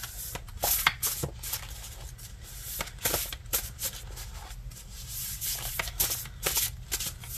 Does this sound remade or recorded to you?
recorded